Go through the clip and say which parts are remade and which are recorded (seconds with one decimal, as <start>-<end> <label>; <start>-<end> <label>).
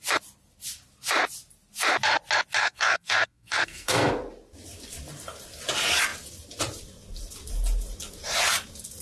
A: 0.0-2.6 recorded; 2.6-4.1 remade; 4.1-9.0 recorded